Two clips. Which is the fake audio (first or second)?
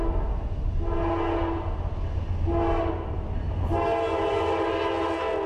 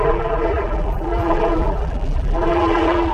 second